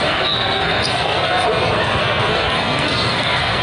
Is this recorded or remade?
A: remade